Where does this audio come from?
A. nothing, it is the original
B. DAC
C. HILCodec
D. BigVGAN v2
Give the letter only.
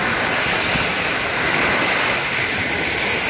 A